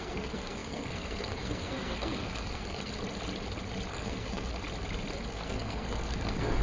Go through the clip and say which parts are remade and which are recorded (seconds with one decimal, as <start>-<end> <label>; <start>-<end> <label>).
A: 0.0-2.9 remade; 2.9-3.9 recorded; 3.9-4.5 remade; 4.5-5.3 recorded; 5.3-6.6 remade